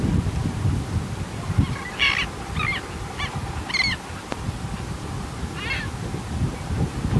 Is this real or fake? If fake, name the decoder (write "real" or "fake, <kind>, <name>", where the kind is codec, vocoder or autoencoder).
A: real